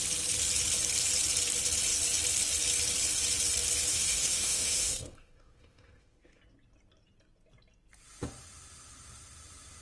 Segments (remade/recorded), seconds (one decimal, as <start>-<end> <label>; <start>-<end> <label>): 0.0-3.9 recorded; 3.9-6.4 remade; 6.4-9.8 recorded